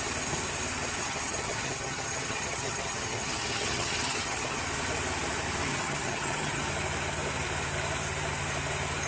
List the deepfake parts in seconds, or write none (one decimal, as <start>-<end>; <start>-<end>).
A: 1.0-4.6; 5.7-6.6